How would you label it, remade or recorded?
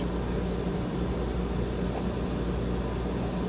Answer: recorded